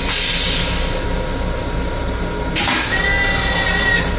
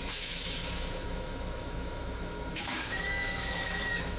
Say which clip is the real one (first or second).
first